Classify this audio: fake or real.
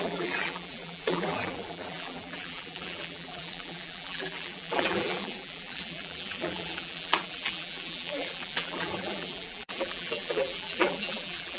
fake